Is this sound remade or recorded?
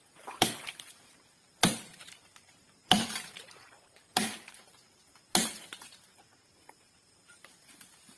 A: remade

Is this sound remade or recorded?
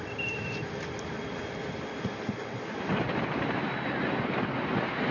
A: recorded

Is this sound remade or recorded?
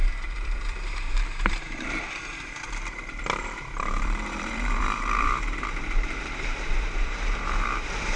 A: remade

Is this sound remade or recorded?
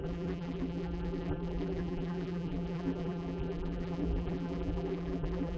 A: remade